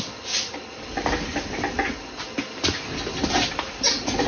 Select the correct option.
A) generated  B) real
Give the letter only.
B